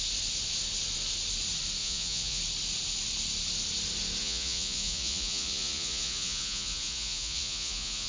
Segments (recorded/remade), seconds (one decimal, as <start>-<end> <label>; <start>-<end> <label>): 0.0-1.8 recorded; 1.8-2.4 remade; 2.4-4.2 recorded; 4.2-8.1 remade